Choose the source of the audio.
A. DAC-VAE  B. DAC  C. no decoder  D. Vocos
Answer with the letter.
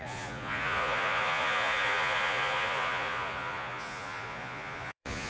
D